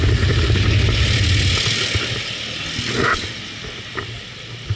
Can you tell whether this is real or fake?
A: real